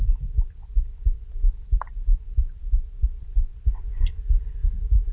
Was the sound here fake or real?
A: real